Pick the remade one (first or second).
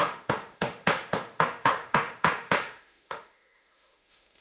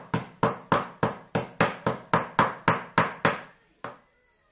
first